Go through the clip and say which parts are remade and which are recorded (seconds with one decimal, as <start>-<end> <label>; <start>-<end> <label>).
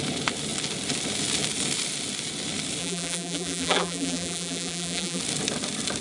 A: 0.0-2.8 recorded; 2.8-5.2 remade; 5.2-6.0 recorded